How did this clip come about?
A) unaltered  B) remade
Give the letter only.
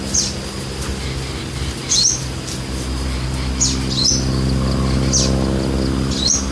A